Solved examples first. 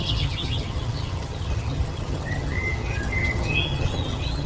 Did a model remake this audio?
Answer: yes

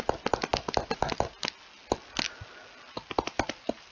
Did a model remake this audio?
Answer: no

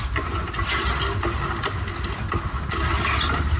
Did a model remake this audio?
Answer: no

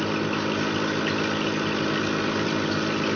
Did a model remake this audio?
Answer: no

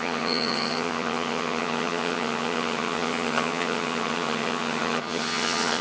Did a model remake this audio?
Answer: yes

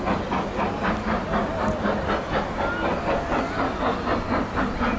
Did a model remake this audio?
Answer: no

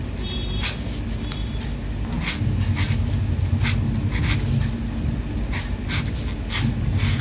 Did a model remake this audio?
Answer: no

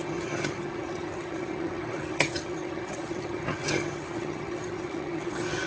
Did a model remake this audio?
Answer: yes